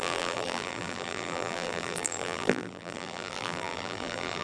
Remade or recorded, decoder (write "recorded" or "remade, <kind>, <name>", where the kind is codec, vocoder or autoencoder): remade, vocoder, BigVGAN v2